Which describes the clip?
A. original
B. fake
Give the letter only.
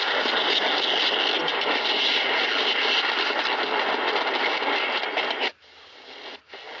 A